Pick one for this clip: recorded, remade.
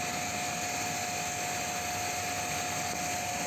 recorded